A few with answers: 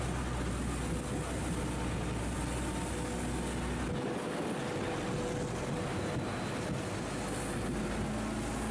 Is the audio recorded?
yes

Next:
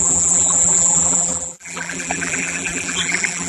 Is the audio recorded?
no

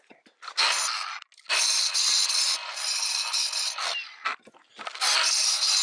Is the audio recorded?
yes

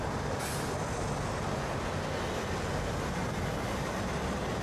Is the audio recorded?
yes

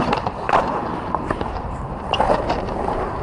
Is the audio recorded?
no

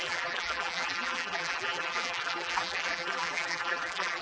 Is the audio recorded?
no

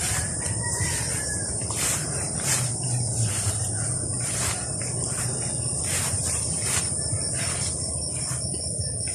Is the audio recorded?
no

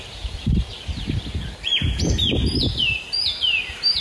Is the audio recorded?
yes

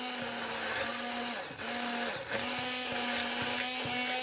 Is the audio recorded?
yes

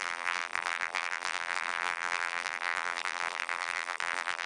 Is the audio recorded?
no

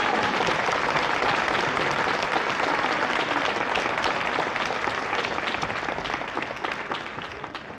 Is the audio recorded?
yes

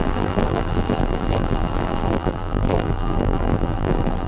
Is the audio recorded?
no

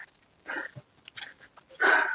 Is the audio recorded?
yes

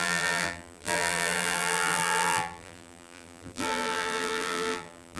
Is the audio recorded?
no